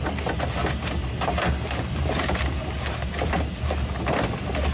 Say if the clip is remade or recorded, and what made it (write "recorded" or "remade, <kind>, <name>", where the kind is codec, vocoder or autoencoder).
recorded